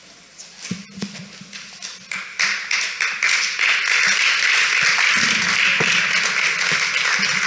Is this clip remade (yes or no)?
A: no